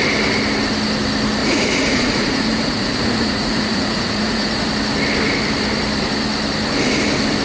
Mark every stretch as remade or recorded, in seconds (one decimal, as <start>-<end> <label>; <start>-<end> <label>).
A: 0.0-1.4 recorded; 1.4-4.7 remade; 4.7-7.4 recorded

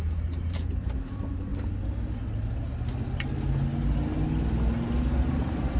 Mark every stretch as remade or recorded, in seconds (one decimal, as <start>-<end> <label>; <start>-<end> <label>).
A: 0.0-1.5 remade; 1.5-5.0 recorded; 5.0-5.8 remade

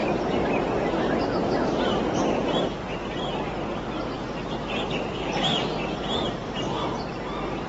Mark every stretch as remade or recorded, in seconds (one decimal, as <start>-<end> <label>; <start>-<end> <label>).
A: 0.0-7.7 recorded